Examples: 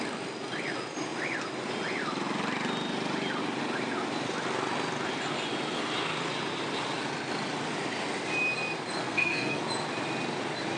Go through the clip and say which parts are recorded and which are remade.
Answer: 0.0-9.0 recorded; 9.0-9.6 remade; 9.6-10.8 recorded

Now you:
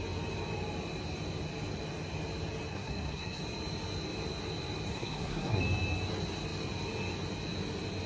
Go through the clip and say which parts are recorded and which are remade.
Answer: 0.0-2.7 recorded; 2.7-3.4 remade; 3.4-4.9 recorded; 4.9-5.6 remade; 5.6-8.1 recorded

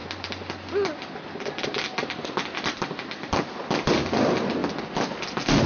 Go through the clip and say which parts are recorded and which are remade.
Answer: 0.0-5.7 recorded